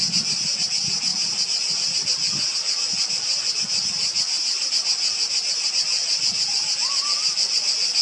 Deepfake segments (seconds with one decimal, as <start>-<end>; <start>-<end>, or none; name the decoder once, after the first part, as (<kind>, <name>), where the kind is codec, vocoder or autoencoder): none